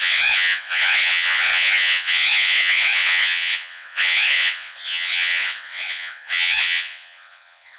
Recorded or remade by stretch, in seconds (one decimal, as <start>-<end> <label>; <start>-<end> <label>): 0.0-7.8 remade